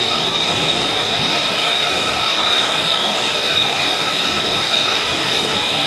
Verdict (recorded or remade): remade